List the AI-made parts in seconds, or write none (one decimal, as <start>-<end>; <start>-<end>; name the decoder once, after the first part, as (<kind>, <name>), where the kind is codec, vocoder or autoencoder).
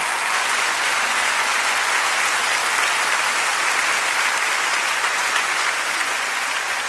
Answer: 0.0-2.4 (vocoder, Vocos); 4.8-6.9